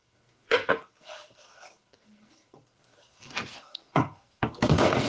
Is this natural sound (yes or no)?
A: no